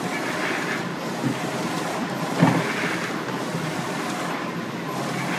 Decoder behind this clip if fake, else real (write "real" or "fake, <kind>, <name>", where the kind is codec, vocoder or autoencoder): real